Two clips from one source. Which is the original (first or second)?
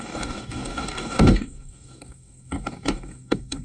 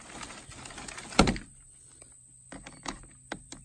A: second